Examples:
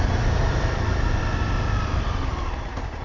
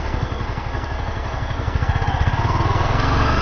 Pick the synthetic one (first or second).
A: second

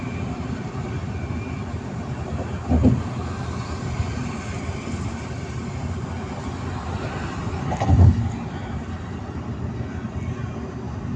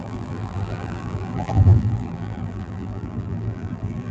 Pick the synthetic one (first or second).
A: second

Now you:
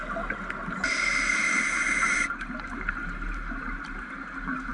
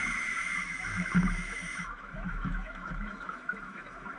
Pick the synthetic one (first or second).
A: second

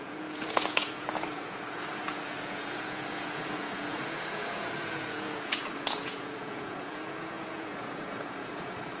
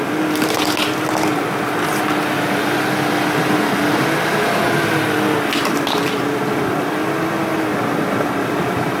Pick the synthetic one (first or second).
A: first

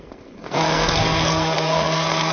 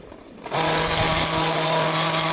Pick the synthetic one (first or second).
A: first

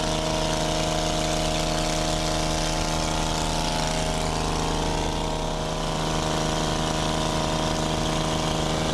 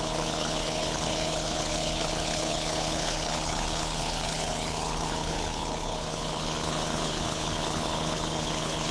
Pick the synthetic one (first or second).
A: second